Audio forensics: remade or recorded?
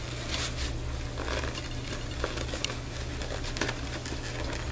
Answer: recorded